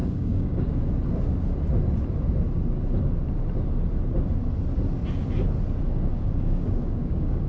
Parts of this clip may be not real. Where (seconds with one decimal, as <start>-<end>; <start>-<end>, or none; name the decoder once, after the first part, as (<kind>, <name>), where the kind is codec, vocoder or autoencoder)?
0.0-0.7 (codec, DAC); 6.1-7.5